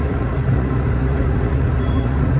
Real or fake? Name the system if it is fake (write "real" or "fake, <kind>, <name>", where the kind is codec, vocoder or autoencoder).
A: fake, vocoder, Vocos